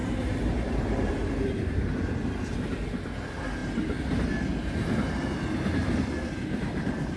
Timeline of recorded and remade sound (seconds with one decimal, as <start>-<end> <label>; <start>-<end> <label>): 0.0-1.1 remade; 1.1-7.2 recorded